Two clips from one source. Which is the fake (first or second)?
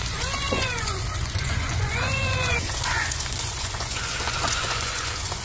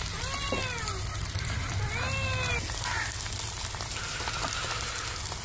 first